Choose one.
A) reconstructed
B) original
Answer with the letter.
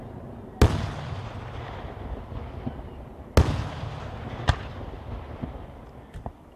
B